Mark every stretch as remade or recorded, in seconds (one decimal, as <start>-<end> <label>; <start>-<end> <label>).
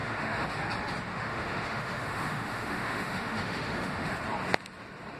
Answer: 0.0-0.6 remade; 0.6-1.1 recorded; 1.1-4.2 remade; 4.2-5.2 recorded